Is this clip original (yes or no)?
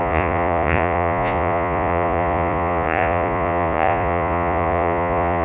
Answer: no